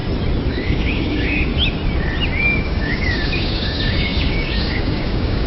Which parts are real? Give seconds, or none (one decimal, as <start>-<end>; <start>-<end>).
0.0-0.5; 1.5-2.4